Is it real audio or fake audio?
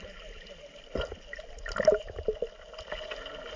real